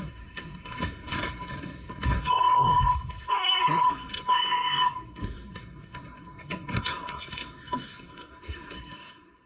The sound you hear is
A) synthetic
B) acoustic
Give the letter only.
A